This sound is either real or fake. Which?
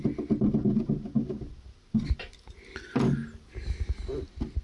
real